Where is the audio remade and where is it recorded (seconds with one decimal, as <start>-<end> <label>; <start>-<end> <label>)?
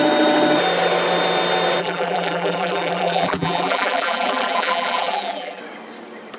0.0-1.8 recorded; 1.8-5.6 remade; 5.6-6.4 recorded